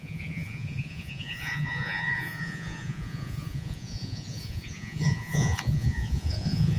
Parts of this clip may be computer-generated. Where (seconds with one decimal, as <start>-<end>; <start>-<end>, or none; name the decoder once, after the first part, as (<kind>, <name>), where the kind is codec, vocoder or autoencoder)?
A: 0.0-6.8 (vocoder, Vocos)